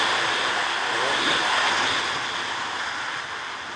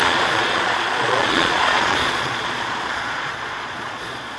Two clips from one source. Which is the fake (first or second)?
second